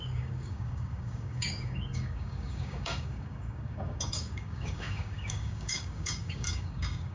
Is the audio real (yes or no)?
no